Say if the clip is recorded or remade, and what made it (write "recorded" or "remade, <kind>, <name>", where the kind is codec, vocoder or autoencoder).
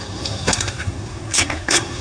remade, codec, SNAC